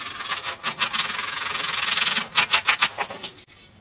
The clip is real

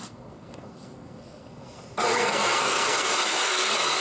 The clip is fake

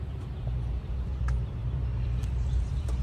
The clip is fake